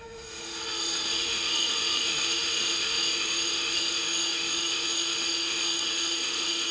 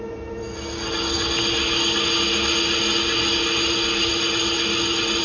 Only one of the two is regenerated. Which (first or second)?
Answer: first